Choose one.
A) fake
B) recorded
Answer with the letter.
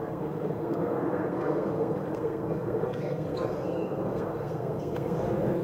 A